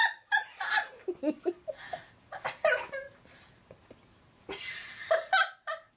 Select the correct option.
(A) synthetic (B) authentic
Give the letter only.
B